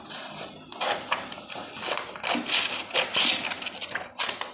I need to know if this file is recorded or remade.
recorded